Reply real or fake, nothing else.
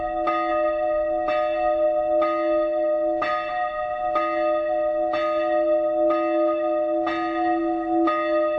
real